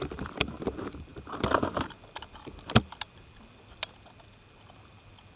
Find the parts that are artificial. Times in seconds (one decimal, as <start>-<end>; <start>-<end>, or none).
none